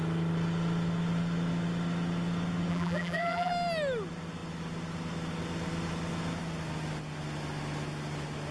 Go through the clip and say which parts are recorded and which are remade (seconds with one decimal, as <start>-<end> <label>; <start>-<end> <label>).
0.0-2.7 recorded; 2.7-3.5 remade; 3.5-8.5 recorded